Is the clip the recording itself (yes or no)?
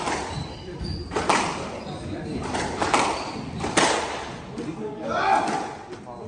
yes